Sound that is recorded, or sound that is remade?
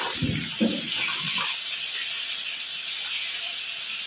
recorded